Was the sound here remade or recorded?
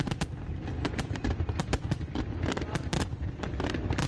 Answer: recorded